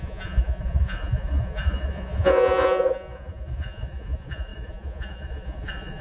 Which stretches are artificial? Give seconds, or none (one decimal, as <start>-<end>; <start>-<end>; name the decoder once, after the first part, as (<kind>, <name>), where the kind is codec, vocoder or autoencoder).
0.0-6.0 (vocoder, Vocos)